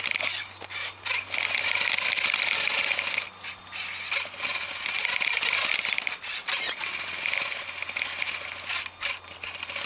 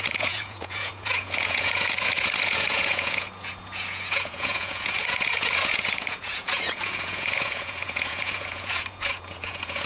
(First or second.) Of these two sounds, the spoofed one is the second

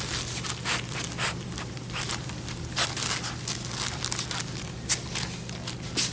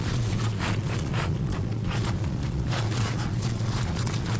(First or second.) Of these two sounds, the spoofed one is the second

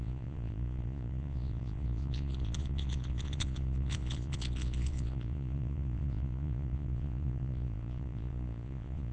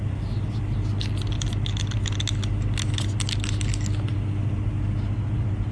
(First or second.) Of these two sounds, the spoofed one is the first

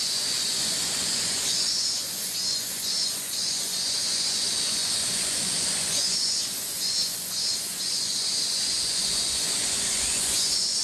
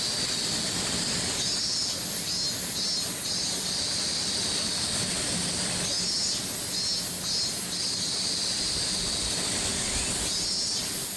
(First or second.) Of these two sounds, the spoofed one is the first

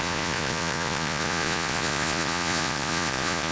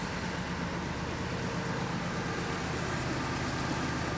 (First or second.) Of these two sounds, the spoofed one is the first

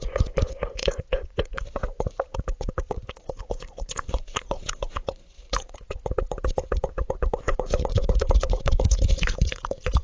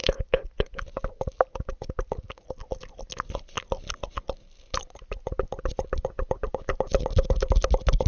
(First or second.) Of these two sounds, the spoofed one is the first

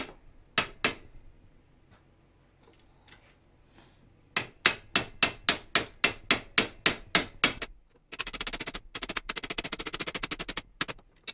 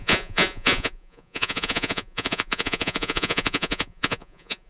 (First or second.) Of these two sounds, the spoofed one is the second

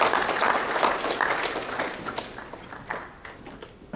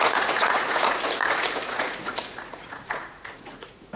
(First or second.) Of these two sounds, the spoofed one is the second